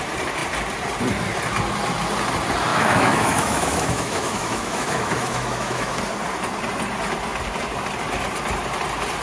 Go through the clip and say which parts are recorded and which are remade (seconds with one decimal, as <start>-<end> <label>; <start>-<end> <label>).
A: 0.0-2.7 recorded; 2.7-6.0 remade; 6.0-9.2 recorded